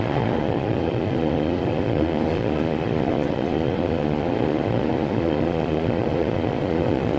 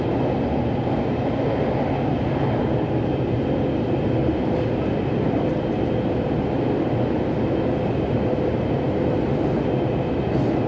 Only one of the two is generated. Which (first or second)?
first